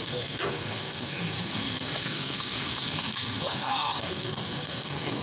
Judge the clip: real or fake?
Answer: fake